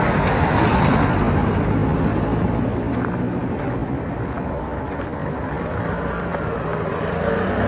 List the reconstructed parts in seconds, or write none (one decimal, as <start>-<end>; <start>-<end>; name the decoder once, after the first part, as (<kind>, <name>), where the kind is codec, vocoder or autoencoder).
none